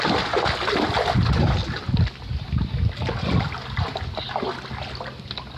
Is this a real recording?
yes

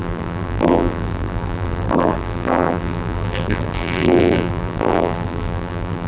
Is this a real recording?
no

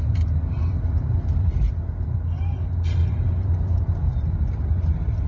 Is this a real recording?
no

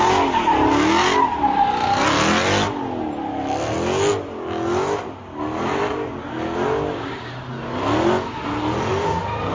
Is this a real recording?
yes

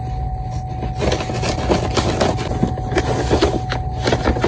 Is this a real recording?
yes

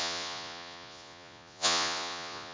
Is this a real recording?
no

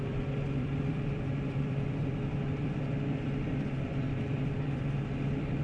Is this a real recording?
no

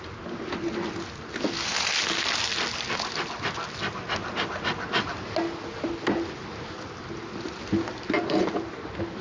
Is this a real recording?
yes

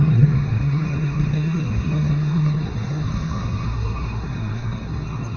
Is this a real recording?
no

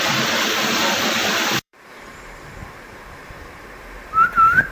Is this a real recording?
no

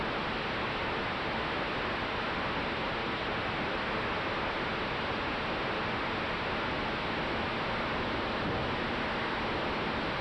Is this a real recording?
yes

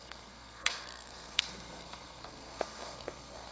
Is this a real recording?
no